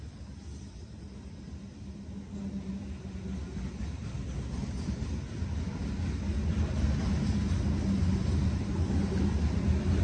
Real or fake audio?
real